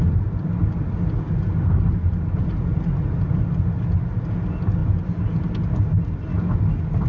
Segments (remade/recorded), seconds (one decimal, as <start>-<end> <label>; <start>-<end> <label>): 0.0-7.1 recorded